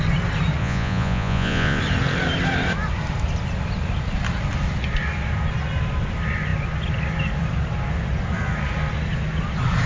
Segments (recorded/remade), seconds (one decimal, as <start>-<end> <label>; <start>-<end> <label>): 0.0-0.6 recorded; 0.6-1.8 remade; 1.8-9.9 recorded

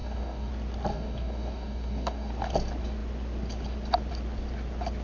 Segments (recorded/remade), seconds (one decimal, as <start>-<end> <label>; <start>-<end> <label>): 0.0-0.5 remade; 0.5-0.9 recorded; 0.9-2.3 remade; 2.3-5.0 recorded

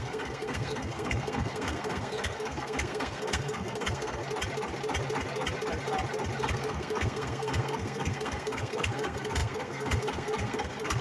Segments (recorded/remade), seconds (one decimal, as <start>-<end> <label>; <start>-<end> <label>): 0.0-4.2 remade; 4.2-6.4 recorded; 6.4-11.0 remade

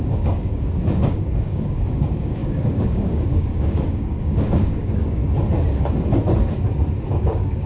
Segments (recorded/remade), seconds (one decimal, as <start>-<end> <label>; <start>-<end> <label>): 0.0-5.2 remade; 5.2-7.1 recorded; 7.1-7.7 remade